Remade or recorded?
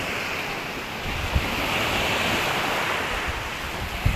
recorded